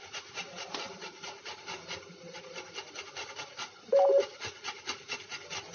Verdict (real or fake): real